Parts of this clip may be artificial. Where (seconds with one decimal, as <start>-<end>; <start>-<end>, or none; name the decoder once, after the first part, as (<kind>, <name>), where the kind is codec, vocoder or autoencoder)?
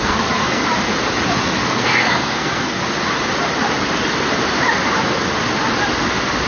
0.0-0.6 (codec, SNAC); 1.6-2.8